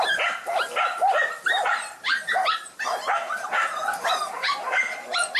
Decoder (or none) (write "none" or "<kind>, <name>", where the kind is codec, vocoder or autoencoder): none